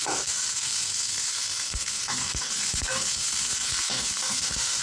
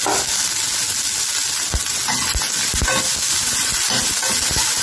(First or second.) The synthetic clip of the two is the first